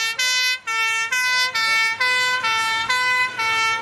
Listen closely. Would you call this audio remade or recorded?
recorded